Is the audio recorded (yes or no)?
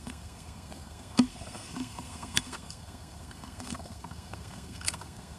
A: no